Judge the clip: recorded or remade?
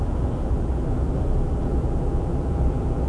remade